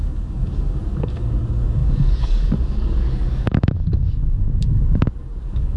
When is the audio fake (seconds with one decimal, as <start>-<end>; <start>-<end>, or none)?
0.0-5.8